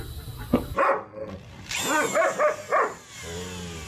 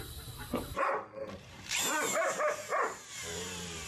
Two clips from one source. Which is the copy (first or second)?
second